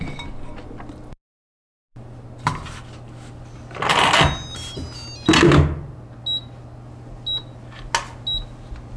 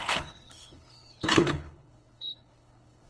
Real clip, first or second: first